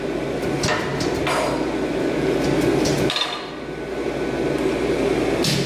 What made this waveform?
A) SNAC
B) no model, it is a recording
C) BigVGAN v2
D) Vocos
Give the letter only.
B